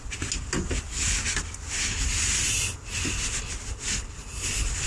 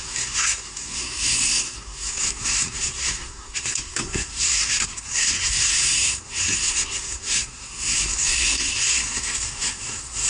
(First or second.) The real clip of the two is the first